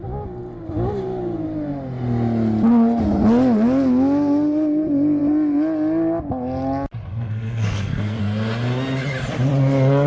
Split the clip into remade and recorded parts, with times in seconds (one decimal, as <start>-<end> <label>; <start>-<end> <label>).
0.0-7.1 recorded; 7.1-8.2 remade; 8.2-10.1 recorded